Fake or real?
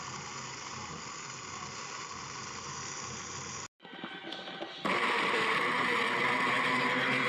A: real